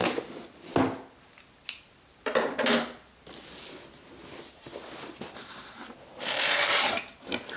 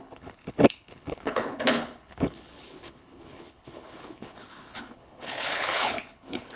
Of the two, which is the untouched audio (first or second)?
first